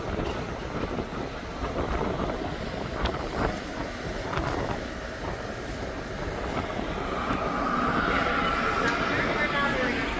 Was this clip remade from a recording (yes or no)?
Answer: no